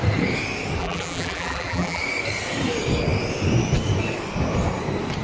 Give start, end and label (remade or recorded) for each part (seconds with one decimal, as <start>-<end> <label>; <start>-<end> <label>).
0.0-0.8 recorded; 0.8-2.0 remade; 2.0-5.2 recorded